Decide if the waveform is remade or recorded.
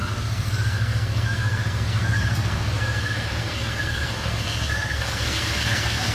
remade